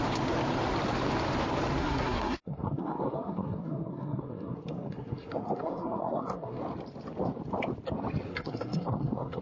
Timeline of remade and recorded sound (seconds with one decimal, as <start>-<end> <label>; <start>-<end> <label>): 0.0-1.8 recorded; 1.8-6.6 remade; 6.6-8.3 recorded; 8.3-9.4 remade